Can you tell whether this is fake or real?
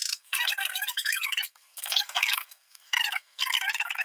fake